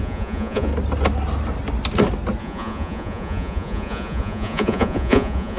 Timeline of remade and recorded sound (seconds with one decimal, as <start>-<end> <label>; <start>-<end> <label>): 0.0-0.7 remade; 0.7-2.4 recorded; 2.4-5.6 remade